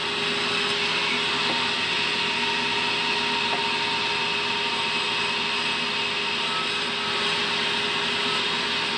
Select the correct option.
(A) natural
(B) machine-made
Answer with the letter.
A